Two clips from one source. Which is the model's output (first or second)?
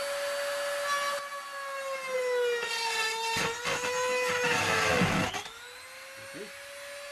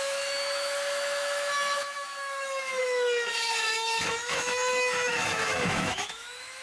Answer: second